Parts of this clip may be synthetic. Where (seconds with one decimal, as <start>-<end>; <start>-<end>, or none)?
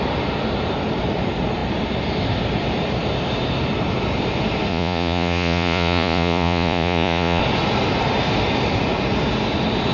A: 4.7-7.4